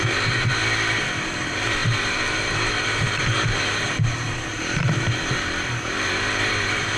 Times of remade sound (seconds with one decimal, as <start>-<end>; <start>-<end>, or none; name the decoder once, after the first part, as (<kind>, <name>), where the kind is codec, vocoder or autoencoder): 0.0-0.6 (vocoder, BigVGAN v2); 1.2-7.0